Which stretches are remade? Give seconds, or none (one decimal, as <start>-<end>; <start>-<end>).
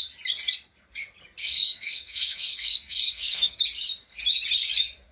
1.4-3.6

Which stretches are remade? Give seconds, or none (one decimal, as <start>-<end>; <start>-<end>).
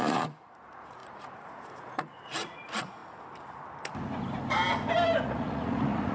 0.0-3.0; 5.2-6.1